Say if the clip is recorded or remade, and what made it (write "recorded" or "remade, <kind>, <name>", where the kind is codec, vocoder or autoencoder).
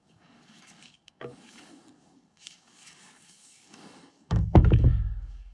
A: remade, codec, DAC